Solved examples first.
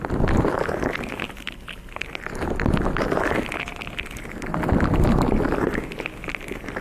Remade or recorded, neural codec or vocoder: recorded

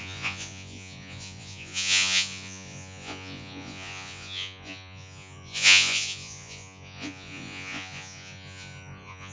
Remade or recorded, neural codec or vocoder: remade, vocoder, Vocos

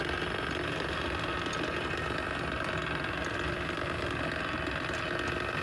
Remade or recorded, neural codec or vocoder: recorded